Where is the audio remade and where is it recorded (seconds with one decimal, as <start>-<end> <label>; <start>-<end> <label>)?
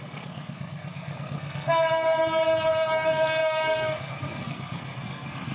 0.0-5.5 remade